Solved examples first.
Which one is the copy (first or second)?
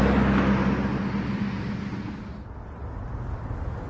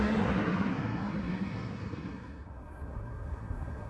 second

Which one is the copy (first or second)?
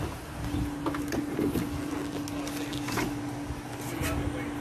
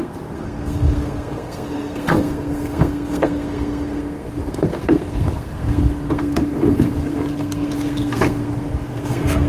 second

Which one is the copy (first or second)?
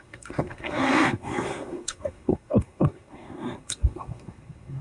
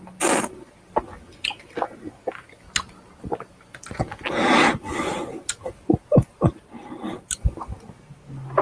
first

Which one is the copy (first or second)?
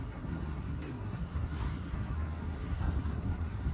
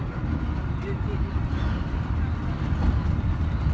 first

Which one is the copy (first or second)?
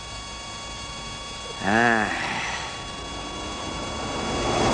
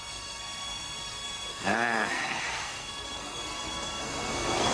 second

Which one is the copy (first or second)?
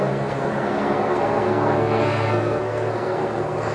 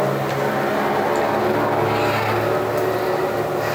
first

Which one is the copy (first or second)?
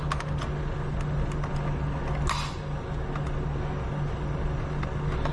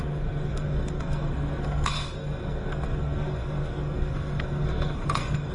second